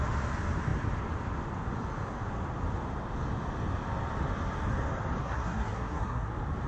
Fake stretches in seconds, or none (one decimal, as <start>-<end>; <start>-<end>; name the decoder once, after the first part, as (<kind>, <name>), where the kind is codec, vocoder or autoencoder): 5.2-6.3 (codec, SNAC)